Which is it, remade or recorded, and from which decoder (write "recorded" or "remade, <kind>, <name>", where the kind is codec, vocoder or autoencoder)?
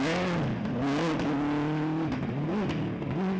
recorded